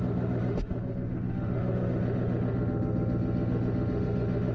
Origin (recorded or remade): remade